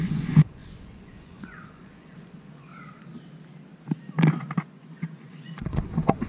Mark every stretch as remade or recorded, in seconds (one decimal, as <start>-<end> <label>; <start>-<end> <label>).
0.0-2.7 remade; 2.7-4.7 recorded; 4.7-6.3 remade